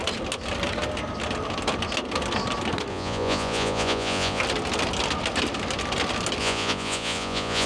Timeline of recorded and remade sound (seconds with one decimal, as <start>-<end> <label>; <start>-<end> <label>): 0.0-2.9 recorded; 2.9-4.4 remade; 4.4-6.4 recorded; 6.4-7.7 remade